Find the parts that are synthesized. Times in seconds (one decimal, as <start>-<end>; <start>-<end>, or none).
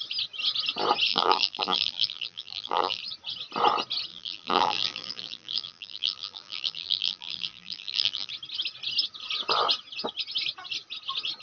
1.1-3.0; 4.1-8.3